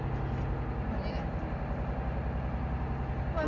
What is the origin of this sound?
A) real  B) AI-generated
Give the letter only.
A